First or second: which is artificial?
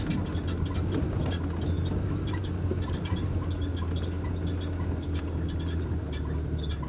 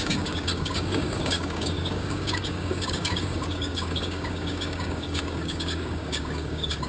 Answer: second